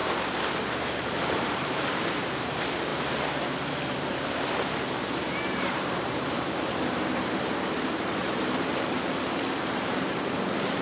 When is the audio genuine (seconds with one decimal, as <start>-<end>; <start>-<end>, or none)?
0.0-0.6; 2.9-4.0